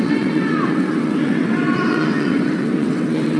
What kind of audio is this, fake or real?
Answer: fake